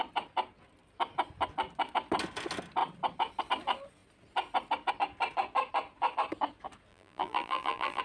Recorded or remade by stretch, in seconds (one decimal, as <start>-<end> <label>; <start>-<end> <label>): 0.0-6.9 recorded; 6.9-8.0 remade